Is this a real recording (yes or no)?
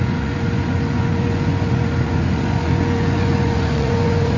no